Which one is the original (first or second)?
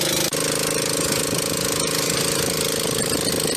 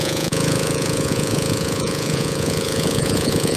first